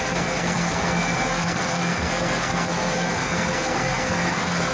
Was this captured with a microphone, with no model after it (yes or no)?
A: no